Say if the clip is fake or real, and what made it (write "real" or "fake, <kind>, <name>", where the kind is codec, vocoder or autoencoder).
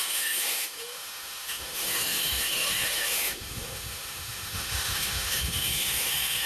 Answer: fake, autoencoder, DAC-VAE